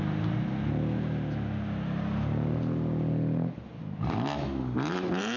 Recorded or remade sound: recorded